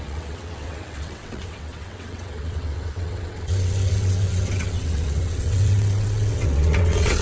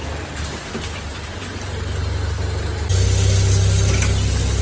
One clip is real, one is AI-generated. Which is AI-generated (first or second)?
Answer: first